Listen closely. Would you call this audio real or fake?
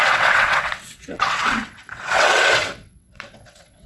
fake